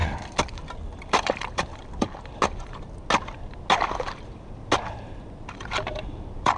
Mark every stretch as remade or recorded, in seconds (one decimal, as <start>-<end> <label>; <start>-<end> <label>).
0.0-2.3 remade; 2.3-5.4 recorded; 5.4-6.6 remade